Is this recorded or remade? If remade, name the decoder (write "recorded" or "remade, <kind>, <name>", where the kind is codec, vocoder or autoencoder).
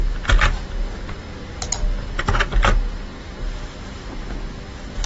recorded